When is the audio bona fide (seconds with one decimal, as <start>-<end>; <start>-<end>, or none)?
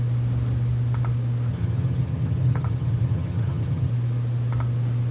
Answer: 0.0-1.5; 3.9-5.1